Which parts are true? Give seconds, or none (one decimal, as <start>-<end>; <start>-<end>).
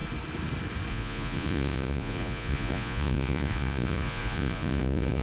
0.0-0.9